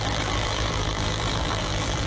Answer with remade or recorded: remade